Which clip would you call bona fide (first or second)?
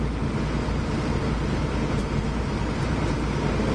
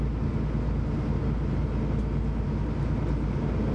second